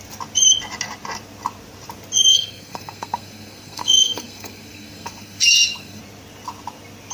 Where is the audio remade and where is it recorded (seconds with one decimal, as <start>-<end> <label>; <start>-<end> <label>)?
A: 0.0-2.3 recorded; 2.3-6.0 remade; 6.0-7.1 recorded